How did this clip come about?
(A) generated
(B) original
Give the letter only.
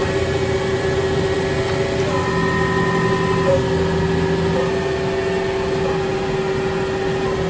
B